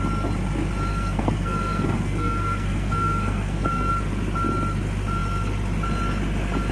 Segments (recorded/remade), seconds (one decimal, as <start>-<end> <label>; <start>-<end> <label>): 0.0-0.9 recorded; 0.9-3.9 remade; 3.9-6.7 recorded